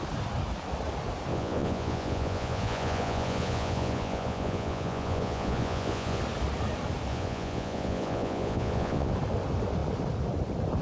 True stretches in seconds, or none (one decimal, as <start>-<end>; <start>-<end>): 0.0-1.3; 6.2-7.1; 9.1-10.8